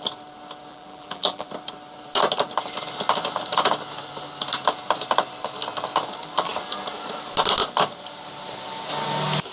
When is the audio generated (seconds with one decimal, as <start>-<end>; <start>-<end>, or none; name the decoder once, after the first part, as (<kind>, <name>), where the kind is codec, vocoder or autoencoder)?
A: 0.7-1.5 (vocoder, BigVGAN v2)